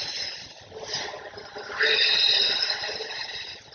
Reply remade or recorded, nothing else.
recorded